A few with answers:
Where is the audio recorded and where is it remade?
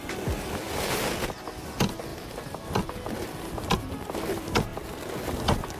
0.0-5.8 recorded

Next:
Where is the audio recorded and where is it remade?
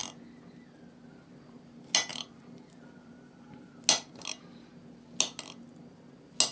0.0-2.1 recorded; 2.1-3.7 remade; 3.7-6.5 recorded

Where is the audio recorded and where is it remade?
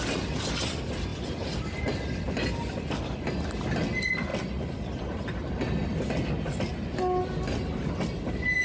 0.0-1.1 recorded; 1.1-1.6 remade; 1.6-8.6 recorded